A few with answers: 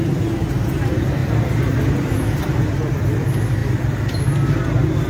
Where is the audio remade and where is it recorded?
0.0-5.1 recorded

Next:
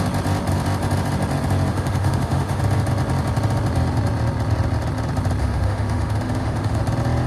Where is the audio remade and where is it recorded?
0.0-1.7 recorded; 1.7-2.6 remade; 2.6-5.4 recorded; 5.4-6.8 remade; 6.8-7.3 recorded